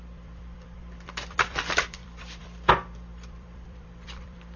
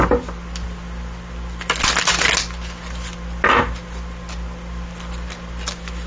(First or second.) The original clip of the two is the second